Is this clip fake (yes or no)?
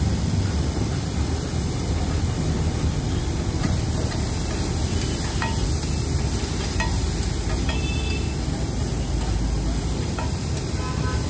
no